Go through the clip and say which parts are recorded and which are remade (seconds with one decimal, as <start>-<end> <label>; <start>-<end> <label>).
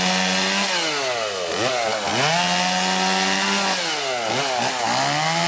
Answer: 0.0-5.5 recorded